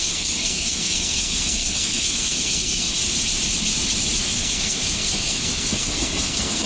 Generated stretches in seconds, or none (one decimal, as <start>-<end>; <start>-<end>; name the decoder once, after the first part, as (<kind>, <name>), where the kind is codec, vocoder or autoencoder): 0.0-3.0 (codec, SNAC); 4.2-6.7